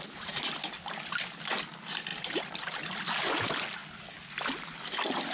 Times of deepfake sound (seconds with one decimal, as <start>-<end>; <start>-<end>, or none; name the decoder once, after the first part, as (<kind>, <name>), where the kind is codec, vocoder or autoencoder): none